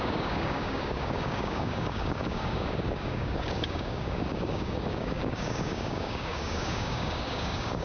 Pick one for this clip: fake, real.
fake